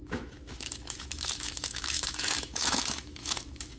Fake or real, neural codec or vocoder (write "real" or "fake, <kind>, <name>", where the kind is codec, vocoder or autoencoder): fake, autoencoder, DAC-VAE